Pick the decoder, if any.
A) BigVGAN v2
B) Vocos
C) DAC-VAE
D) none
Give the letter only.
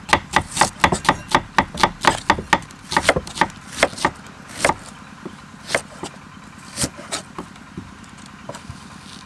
D